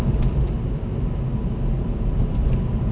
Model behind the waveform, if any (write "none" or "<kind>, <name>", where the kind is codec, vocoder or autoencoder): none